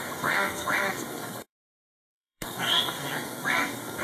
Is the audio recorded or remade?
remade